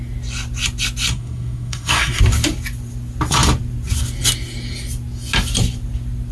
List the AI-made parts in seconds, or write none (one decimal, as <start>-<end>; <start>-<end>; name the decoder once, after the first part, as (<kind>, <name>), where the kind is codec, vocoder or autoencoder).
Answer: 1.1-2.2 (codec, SNAC)